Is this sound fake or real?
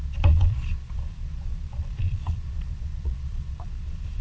fake